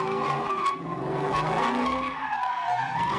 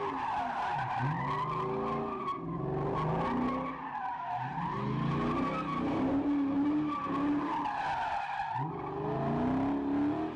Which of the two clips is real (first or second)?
second